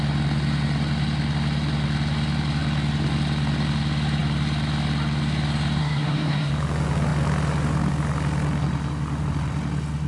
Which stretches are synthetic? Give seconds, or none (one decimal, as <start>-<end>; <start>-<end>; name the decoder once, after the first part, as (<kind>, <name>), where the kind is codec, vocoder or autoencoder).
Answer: 5.8-6.5 (codec, SNAC)